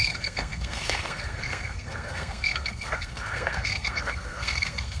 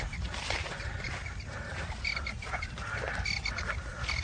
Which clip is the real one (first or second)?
second